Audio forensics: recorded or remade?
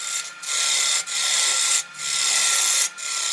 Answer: recorded